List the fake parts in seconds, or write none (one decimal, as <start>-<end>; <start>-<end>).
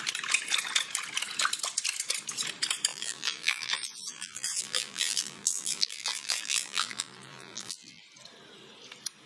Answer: 2.9-8.0